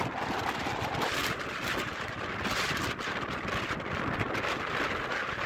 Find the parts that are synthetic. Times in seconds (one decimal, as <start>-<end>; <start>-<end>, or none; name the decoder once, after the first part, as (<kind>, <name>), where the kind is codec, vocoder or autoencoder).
none